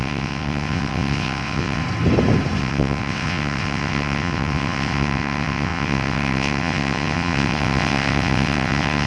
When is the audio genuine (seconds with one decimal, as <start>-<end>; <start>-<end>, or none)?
1.8-2.6